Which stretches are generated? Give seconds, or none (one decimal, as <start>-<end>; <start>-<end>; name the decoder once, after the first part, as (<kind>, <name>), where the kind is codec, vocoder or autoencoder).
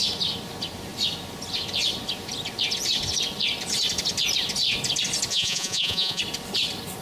5.3-6.2 (vocoder, Vocos)